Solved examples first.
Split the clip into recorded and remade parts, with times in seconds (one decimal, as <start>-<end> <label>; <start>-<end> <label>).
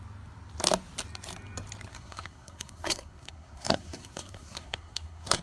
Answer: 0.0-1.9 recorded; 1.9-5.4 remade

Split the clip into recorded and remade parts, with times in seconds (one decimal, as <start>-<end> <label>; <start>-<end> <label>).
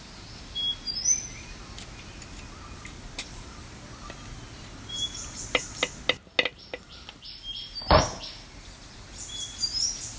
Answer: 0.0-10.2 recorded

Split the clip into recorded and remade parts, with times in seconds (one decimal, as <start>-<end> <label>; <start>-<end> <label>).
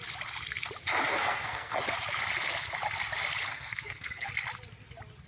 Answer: 0.0-1.1 recorded; 1.1-1.8 remade; 1.8-3.5 recorded; 3.5-4.3 remade; 4.3-5.3 recorded